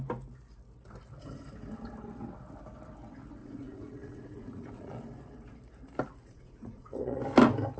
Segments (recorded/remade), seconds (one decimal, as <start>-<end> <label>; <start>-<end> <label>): 0.0-3.4 recorded; 3.4-4.9 remade; 4.9-6.2 recorded; 6.2-7.2 remade; 7.2-7.8 recorded